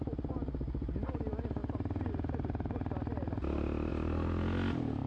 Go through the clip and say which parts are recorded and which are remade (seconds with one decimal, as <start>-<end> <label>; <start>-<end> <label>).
0.0-5.1 recorded